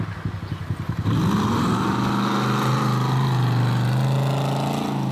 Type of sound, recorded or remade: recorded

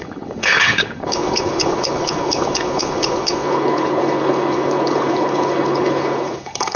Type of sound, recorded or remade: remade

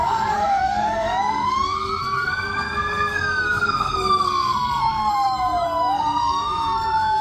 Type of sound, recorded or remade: remade